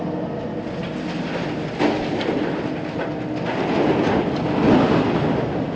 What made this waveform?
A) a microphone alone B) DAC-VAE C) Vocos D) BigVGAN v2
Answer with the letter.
A